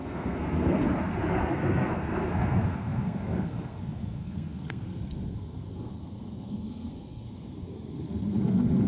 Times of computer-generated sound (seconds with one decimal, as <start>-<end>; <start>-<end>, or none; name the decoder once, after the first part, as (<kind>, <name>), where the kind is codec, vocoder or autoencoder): 0.0-0.8 (codec, SNAC); 1.4-8.9